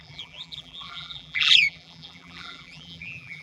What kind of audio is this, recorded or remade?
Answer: remade